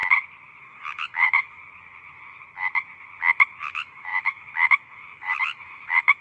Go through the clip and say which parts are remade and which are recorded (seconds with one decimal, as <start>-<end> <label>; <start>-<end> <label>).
0.0-0.6 recorded; 0.6-1.6 remade; 1.6-3.6 recorded; 3.6-6.2 remade